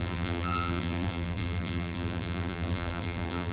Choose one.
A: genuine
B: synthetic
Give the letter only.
B